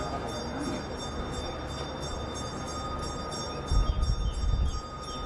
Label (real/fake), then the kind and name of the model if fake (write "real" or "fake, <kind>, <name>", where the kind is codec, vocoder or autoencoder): real